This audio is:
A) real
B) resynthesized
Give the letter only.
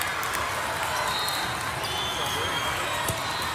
A